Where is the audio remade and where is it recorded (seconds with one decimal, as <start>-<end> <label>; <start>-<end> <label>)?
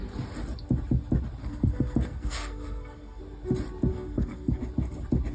0.0-1.4 recorded; 1.4-3.2 remade; 3.2-3.9 recorded; 3.9-4.6 remade; 4.6-5.3 recorded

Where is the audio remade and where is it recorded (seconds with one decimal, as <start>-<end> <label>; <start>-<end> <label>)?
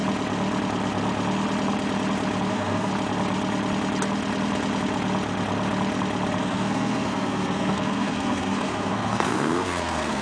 0.0-2.5 recorded; 2.5-2.9 remade; 2.9-6.4 recorded; 6.4-10.2 remade